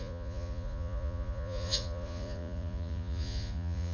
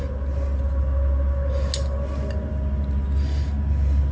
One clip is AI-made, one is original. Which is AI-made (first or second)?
first